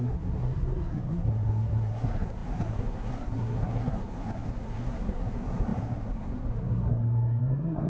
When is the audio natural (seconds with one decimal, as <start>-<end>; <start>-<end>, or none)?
none